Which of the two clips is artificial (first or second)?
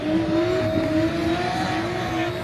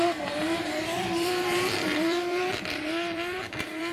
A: second